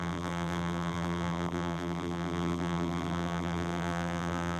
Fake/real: fake